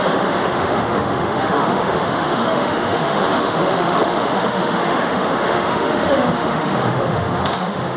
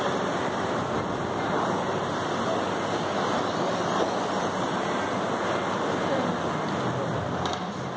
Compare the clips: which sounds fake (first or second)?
first